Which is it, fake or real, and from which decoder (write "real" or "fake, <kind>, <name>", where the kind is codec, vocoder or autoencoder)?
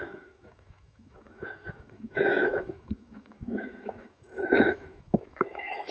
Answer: fake, autoencoder, DAC-VAE